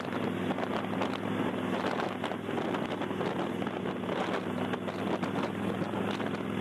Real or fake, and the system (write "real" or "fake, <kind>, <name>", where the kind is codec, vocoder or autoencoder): real